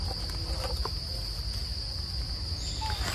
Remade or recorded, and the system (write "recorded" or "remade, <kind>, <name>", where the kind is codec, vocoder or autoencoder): recorded